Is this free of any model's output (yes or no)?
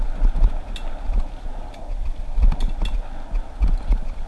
yes